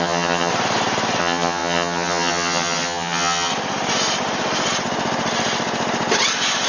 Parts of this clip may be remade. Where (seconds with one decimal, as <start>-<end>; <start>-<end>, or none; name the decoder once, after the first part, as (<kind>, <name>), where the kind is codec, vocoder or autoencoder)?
0.0-0.5 (vocoder, HiFi-GAN); 1.2-3.5